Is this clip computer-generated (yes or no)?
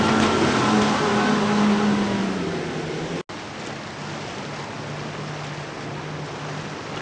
no